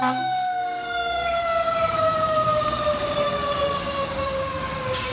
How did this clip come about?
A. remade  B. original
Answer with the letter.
A